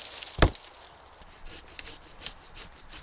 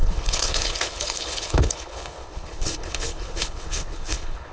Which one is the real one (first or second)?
first